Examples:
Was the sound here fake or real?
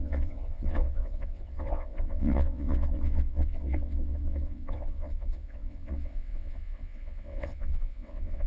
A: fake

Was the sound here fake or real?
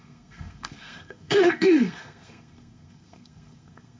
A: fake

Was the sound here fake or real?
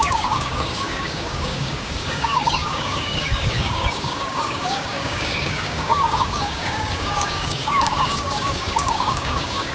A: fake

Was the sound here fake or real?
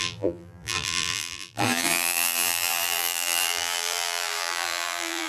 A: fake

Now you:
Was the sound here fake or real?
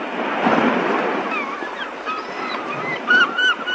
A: fake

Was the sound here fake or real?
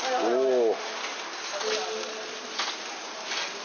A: real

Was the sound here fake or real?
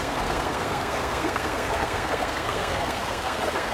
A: fake